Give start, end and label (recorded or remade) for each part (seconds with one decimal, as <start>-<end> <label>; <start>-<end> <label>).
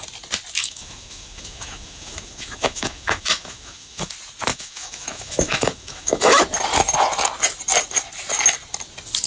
0.0-0.6 recorded; 0.6-4.1 remade; 4.1-4.5 recorded; 4.5-6.4 remade; 6.4-9.3 recorded